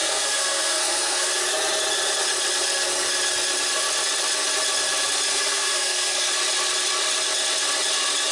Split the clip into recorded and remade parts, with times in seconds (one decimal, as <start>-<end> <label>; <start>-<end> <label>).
0.0-1.3 remade; 1.3-5.3 recorded; 5.3-6.3 remade; 6.3-8.3 recorded